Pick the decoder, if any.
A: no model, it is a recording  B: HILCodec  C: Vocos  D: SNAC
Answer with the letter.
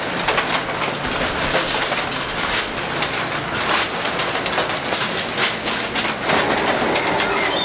A